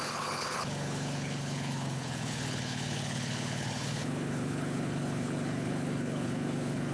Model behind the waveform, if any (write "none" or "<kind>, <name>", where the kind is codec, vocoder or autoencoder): codec, HILCodec